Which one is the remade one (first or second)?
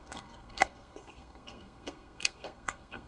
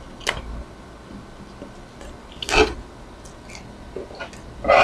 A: first